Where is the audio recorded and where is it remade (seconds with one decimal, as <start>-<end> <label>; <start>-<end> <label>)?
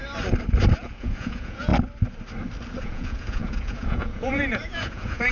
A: 0.0-0.8 recorded; 0.8-1.7 remade; 1.7-2.8 recorded; 2.8-5.3 remade